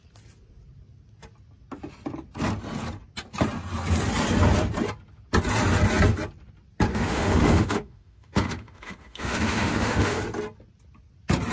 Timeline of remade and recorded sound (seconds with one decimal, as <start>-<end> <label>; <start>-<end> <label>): 0.0-6.9 recorded; 6.9-10.2 remade; 10.2-11.5 recorded